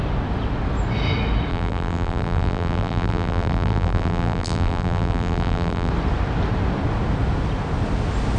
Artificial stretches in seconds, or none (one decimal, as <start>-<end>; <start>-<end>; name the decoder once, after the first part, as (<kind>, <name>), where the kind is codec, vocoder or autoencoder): 1.5-5.9 (vocoder, BigVGAN v2)